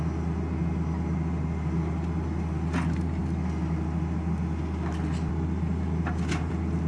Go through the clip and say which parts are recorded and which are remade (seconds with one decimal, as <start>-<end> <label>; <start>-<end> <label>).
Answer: 0.0-6.9 recorded